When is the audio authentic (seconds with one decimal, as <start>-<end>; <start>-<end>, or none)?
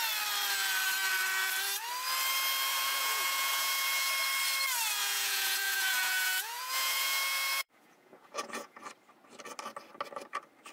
0.0-2.7; 4.1-5.0; 8.8-10.7